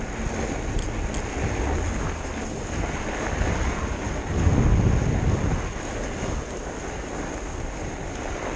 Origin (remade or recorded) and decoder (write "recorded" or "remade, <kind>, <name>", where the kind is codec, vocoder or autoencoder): recorded